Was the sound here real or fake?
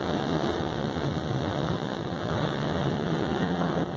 fake